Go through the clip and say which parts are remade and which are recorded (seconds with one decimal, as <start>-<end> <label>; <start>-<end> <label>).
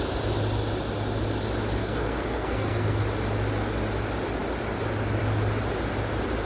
0.0-1.8 recorded; 1.8-3.0 remade; 3.0-6.5 recorded